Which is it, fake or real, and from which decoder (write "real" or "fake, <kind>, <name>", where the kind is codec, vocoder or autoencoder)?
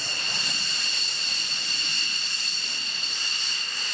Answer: real